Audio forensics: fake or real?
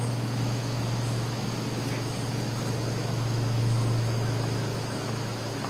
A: fake